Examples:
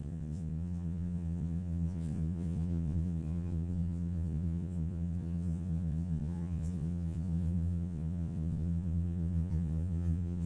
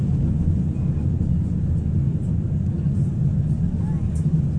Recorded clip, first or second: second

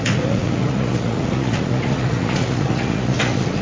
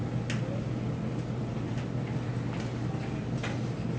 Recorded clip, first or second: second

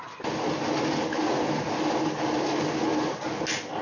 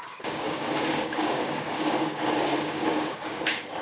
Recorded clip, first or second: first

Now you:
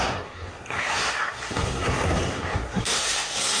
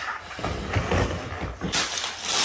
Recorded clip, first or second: second